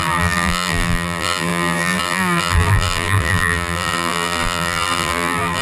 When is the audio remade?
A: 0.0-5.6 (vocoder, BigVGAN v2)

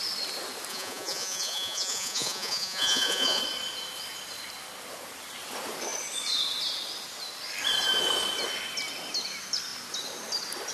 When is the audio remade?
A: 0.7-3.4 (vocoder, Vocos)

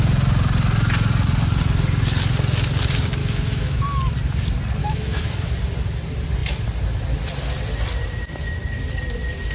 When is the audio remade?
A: 3.2-3.8 (autoencoder, DAC-VAE); 4.8-5.5

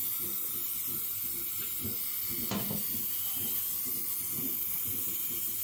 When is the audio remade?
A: none

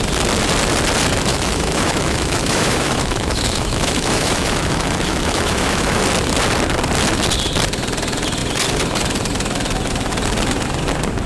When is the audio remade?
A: 1.3-6.0 (autoencoder, DAC-VAE)

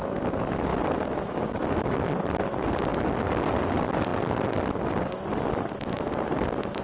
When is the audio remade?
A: none